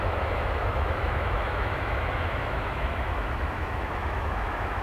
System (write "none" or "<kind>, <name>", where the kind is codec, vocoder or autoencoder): autoencoder, DAC-VAE